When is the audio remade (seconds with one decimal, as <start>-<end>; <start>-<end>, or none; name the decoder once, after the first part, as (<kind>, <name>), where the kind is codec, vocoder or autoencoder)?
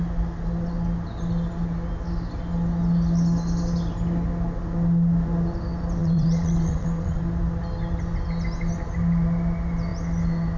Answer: 6.0-7.2 (vocoder, WaveNeXt)